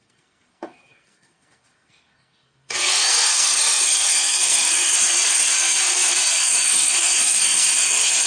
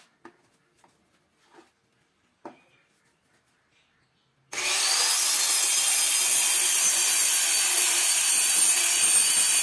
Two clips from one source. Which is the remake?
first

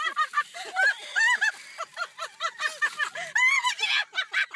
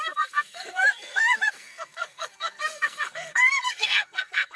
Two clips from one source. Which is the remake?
second